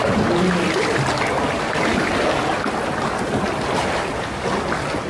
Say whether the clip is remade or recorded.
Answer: recorded